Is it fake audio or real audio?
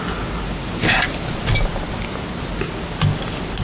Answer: real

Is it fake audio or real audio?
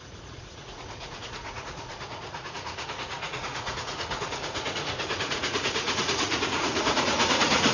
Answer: fake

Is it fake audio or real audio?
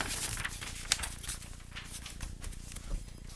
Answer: real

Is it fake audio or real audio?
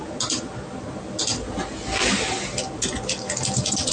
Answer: real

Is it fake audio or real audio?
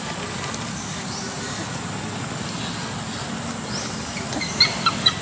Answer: real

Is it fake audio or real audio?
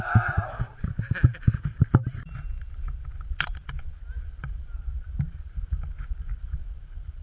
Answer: real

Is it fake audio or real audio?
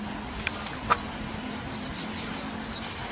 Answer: real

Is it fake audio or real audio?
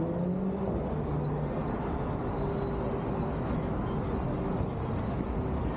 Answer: real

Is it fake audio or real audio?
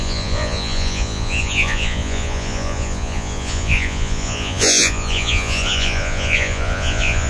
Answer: fake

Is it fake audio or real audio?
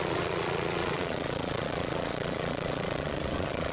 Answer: fake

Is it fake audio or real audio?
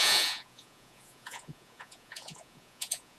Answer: fake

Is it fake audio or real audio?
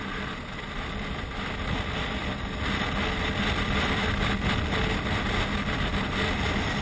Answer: real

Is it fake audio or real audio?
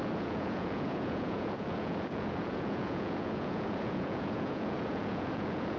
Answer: fake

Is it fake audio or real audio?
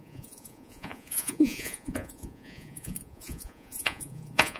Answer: fake